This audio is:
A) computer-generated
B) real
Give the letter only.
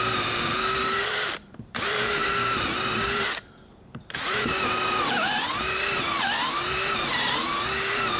A